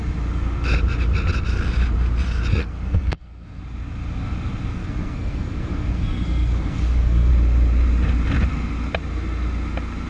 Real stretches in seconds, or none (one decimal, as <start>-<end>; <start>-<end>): 0.0-2.6; 3.6-4.7; 7.3-10.1